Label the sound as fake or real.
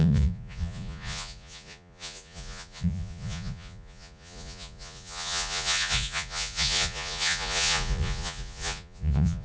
fake